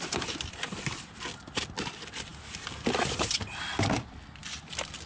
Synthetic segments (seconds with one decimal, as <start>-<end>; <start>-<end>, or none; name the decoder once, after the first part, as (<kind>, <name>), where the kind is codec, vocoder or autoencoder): none